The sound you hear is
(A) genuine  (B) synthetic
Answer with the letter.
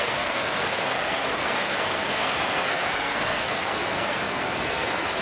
B